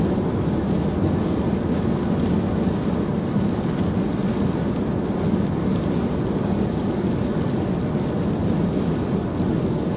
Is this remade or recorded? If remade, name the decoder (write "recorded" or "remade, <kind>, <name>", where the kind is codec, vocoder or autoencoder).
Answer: recorded